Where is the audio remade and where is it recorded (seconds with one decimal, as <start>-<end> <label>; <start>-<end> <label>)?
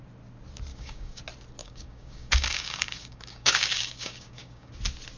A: 0.0-0.7 recorded; 0.7-1.2 remade; 1.2-1.6 recorded; 1.6-4.7 remade; 4.7-5.2 recorded